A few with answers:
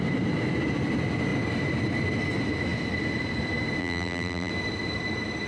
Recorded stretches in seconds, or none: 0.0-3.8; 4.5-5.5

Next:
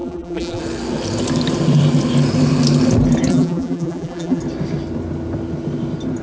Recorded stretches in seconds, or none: 0.6-3.3; 4.4-6.2

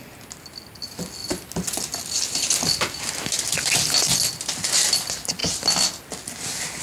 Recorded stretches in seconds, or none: 0.0-6.8

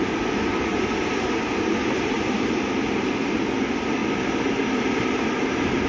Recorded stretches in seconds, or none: 0.0-0.7; 3.4-5.9

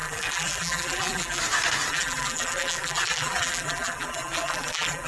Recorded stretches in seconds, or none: 1.4-1.9

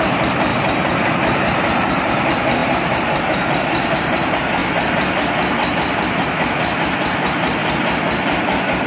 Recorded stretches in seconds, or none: 4.6-5.7; 7.6-8.9

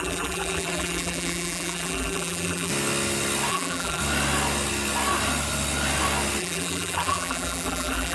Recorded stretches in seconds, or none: 2.7-3.5; 4.0-6.4

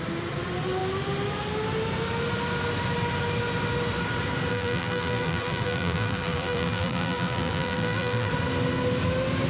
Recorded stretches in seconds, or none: 0.0-4.5; 8.3-9.5